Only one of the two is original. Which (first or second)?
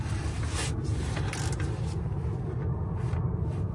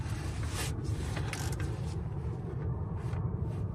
first